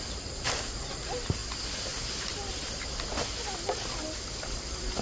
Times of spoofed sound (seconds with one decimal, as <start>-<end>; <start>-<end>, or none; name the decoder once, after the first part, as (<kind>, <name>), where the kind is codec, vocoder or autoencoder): none